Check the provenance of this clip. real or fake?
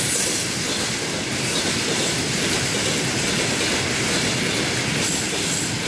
real